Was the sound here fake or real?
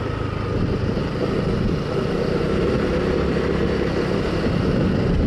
real